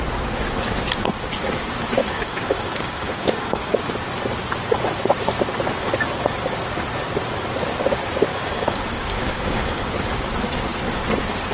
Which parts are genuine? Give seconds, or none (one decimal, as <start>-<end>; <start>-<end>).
0.0-2.0; 3.8-8.3; 9.9-11.5